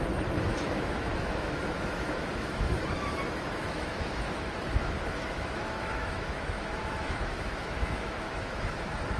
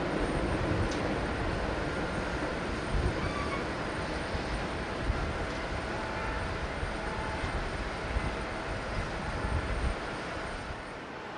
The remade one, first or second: first